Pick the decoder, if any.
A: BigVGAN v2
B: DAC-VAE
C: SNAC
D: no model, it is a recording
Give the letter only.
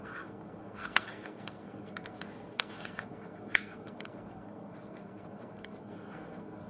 C